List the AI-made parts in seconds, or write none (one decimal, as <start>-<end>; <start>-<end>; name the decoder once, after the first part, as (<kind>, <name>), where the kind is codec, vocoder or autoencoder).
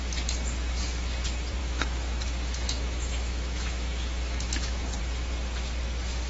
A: 1.6-5.0 (autoencoder, DAC-VAE)